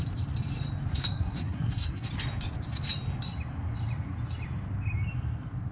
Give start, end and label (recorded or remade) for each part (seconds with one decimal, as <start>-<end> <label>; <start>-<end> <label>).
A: 0.0-0.9 recorded; 0.9-2.1 remade; 2.1-5.7 recorded

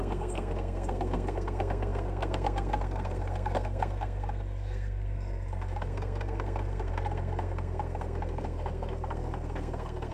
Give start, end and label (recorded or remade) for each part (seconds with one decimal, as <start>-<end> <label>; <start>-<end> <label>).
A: 0.0-10.1 remade

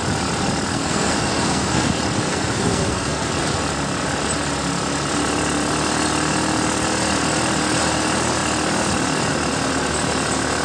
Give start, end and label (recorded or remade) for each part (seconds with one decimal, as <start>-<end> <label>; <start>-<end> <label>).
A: 0.0-0.7 recorded; 0.7-1.9 remade; 1.9-2.3 recorded; 2.3-3.3 remade; 3.3-10.6 recorded

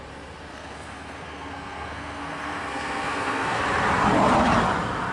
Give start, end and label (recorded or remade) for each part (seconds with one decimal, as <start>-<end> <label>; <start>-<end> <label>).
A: 0.0-0.5 recorded; 0.5-3.6 remade; 3.6-5.1 recorded

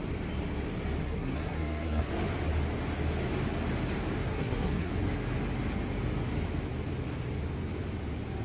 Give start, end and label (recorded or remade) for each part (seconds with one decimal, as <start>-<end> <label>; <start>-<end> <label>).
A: 0.0-1.0 recorded; 1.0-2.1 remade; 2.1-4.3 recorded; 4.3-4.9 remade; 4.9-8.4 recorded

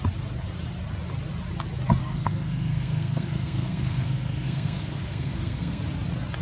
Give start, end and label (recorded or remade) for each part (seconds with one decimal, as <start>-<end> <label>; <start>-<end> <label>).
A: 0.0-2.0 recorded; 2.0-5.8 remade; 5.8-6.4 recorded

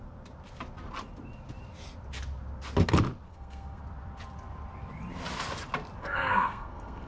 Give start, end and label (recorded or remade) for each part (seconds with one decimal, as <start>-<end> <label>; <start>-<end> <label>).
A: 0.0-3.3 recorded; 3.3-3.8 remade; 3.8-6.0 recorded; 6.0-7.1 remade

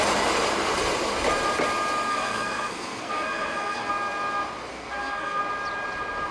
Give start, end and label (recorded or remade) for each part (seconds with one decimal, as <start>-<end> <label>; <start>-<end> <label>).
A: 0.0-2.1 recorded; 2.1-3.9 remade; 3.9-4.7 recorded; 4.7-5.4 remade; 5.4-6.3 recorded